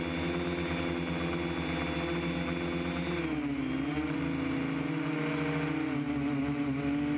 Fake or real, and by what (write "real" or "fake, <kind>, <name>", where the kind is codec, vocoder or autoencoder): real